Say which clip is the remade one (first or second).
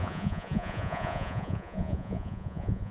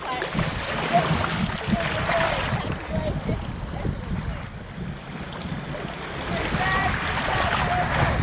first